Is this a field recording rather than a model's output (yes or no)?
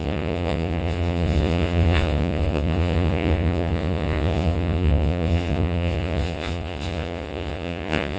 no